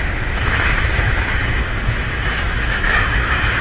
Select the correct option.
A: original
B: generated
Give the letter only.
B